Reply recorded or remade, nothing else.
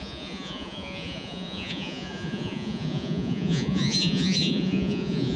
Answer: remade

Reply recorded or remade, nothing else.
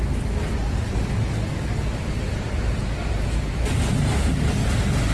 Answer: recorded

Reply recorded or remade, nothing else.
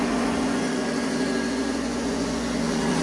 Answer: remade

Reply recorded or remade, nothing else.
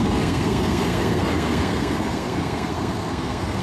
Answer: remade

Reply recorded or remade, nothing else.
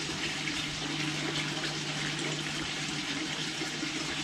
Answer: recorded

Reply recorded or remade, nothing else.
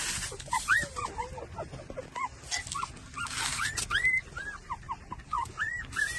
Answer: recorded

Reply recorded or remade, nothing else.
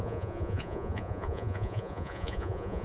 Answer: remade